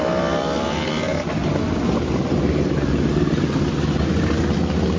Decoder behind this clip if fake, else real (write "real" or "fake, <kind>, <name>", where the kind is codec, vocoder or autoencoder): real